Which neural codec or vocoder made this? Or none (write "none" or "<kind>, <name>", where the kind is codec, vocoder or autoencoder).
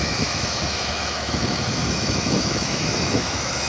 autoencoder, DAC-VAE